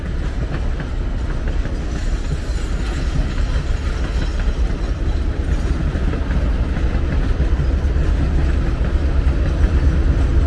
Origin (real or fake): real